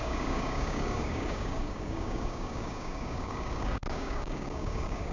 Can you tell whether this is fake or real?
fake